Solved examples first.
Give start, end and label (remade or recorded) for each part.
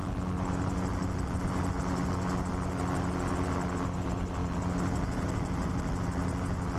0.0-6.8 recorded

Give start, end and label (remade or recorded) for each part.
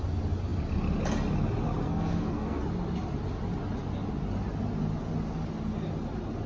0.0-1.8 recorded; 1.8-2.6 remade; 2.6-6.5 recorded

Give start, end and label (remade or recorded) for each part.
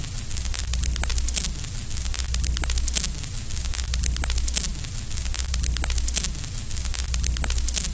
0.0-7.9 recorded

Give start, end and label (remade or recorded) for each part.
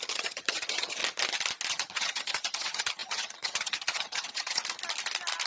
0.0-1.0 remade; 1.0-1.7 recorded; 1.7-4.6 remade; 4.6-5.5 recorded